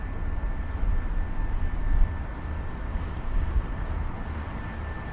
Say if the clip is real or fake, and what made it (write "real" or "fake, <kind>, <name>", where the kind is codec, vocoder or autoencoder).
real